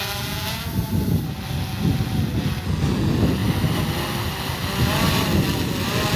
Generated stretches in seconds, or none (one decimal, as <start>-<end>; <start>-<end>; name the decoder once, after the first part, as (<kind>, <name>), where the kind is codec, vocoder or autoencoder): none